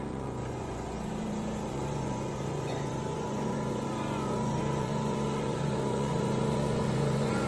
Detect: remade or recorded remade